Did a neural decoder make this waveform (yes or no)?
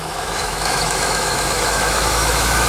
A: yes